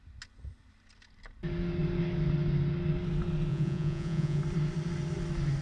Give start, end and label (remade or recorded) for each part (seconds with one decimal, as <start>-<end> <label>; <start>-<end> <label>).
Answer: 0.0-3.5 recorded; 3.5-4.4 remade; 4.4-5.6 recorded